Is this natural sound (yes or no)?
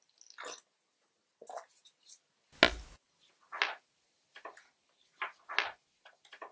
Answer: yes